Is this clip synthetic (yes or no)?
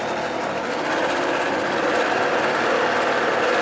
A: yes